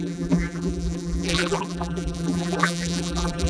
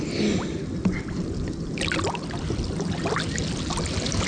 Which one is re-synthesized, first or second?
first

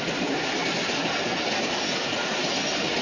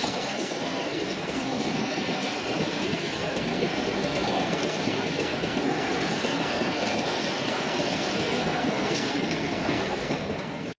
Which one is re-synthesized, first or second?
second